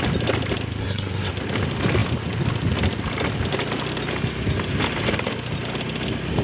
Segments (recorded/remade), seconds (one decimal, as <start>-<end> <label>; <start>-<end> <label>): 0.0-0.8 recorded; 0.8-1.3 remade; 1.3-6.4 recorded